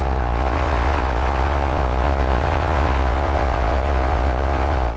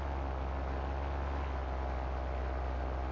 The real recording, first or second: second